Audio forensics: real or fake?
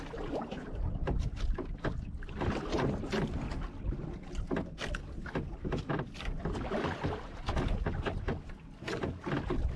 real